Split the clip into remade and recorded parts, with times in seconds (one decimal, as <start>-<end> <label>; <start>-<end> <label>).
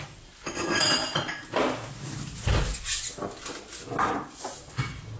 0.0-5.2 recorded